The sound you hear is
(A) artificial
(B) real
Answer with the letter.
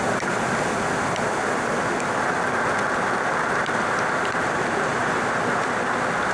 B